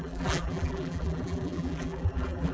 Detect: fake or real fake